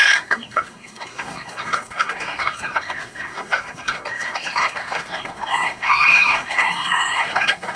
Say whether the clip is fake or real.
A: fake